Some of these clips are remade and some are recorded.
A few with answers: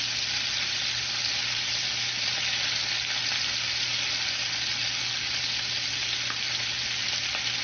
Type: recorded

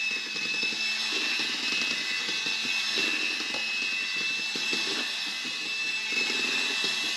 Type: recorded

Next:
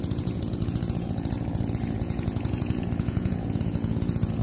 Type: remade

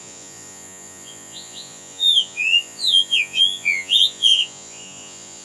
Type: remade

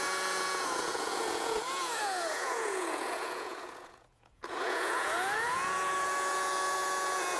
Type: remade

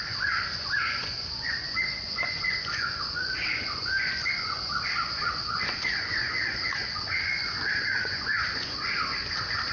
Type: remade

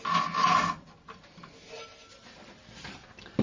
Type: recorded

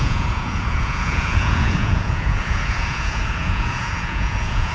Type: remade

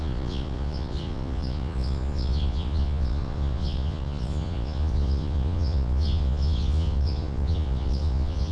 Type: remade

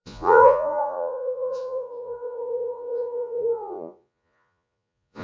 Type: remade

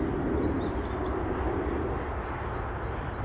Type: recorded